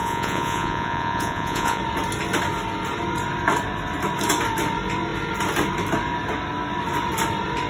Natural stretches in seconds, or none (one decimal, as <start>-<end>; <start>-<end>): 1.8-7.7